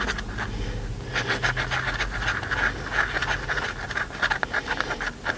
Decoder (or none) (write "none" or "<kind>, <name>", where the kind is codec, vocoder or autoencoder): none